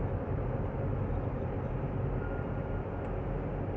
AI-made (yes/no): no